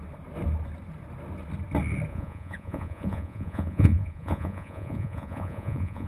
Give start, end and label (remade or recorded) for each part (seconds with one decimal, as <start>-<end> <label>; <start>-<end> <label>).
0.0-2.1 recorded; 2.1-6.1 remade